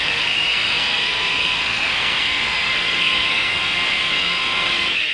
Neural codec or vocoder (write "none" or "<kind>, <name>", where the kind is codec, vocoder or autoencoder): codec, SNAC